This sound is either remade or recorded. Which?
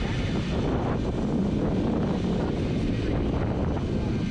recorded